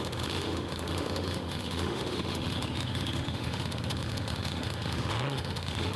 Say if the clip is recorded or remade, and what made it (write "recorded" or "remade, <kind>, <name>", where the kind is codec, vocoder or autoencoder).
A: remade, autoencoder, DAC-VAE